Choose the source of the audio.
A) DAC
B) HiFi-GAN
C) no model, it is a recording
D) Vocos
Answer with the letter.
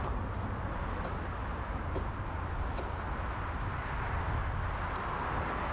C